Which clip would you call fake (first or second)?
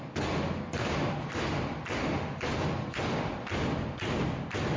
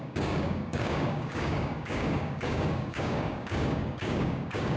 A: second